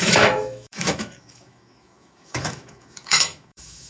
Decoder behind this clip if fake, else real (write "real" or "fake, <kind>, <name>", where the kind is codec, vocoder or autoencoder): fake, autoencoder, DAC-VAE